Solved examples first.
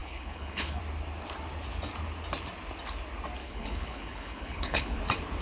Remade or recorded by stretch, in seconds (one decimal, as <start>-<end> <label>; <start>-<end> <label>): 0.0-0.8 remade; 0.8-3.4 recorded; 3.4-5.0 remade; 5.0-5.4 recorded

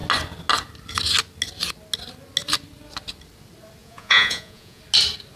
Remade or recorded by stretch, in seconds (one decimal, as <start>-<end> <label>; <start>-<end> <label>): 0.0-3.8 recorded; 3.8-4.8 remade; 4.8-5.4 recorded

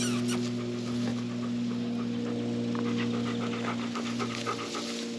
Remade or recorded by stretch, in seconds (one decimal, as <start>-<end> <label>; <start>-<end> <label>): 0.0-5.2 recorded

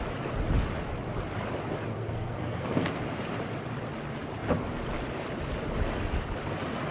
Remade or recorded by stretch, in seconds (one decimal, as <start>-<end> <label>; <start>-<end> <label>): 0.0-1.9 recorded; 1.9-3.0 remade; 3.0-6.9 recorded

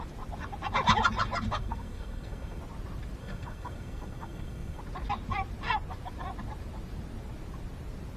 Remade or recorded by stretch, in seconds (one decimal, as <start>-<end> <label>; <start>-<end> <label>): 0.0-1.6 recorded; 1.6-2.6 remade; 2.6-3.2 recorded; 3.2-4.8 remade; 4.8-8.2 recorded

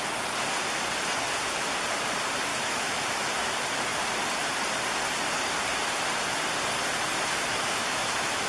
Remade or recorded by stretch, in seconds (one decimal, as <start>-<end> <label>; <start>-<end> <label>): 0.0-2.5 recorded; 2.5-3.3 remade; 3.3-7.5 recorded; 7.5-8.5 remade